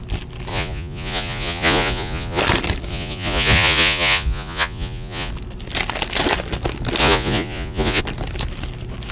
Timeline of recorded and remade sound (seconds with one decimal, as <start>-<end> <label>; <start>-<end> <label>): 0.0-0.5 recorded; 0.5-2.4 remade; 2.4-2.9 recorded; 2.9-5.3 remade; 5.3-7.0 recorded; 7.0-8.0 remade; 8.0-9.1 recorded